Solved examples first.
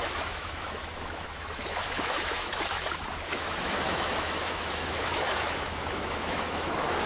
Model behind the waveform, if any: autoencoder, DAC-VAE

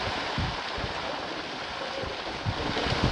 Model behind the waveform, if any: vocoder, BigVGAN v2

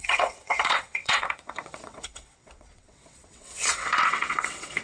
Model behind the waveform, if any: vocoder, WaveNeXt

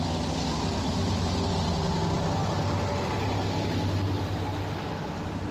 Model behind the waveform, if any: none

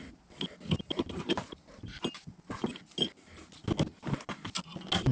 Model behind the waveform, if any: none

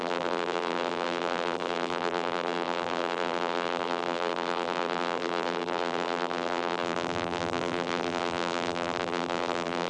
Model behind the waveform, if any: vocoder, BigVGAN v2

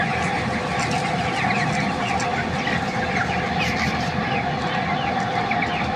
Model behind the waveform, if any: none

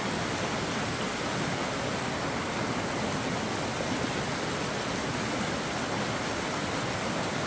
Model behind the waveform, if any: none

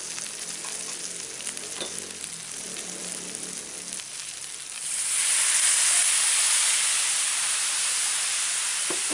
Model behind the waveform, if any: none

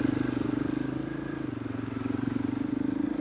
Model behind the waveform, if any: none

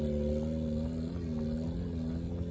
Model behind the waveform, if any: none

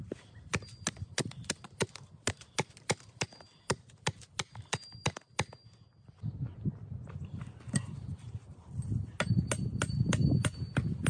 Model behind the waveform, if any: none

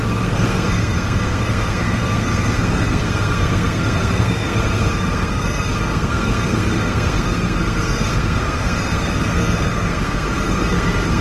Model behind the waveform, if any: codec, SNAC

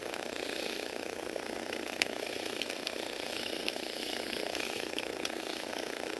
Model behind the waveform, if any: codec, SNAC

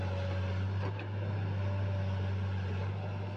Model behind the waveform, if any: none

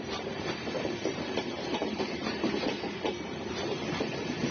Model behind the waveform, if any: vocoder, BigVGAN v2